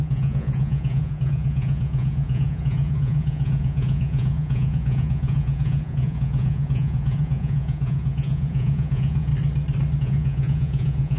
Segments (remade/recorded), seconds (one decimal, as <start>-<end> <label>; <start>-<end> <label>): 0.0-9.3 remade; 9.3-10.0 recorded; 10.0-11.2 remade